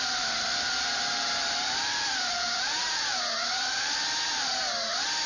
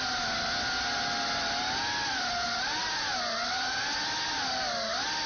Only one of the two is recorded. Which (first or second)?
second